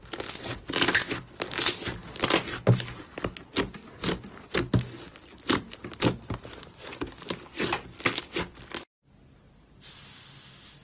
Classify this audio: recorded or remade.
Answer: recorded